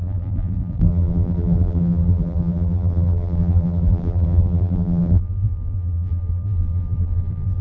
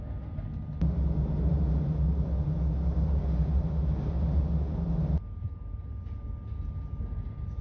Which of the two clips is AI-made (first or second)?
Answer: first